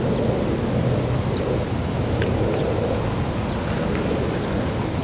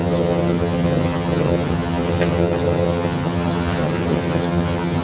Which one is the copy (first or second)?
second